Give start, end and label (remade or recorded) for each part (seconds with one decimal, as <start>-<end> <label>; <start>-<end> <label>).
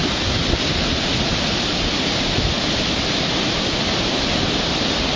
0.0-0.8 remade; 0.8-1.3 recorded; 1.3-4.4 remade; 4.4-5.2 recorded